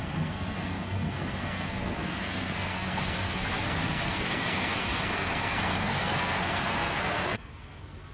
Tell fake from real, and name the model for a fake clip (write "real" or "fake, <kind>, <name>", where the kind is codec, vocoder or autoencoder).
fake, codec, SNAC